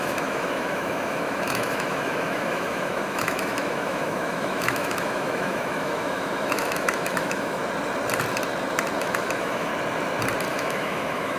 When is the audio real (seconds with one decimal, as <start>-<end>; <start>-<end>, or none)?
7.6-9.0; 9.7-10.5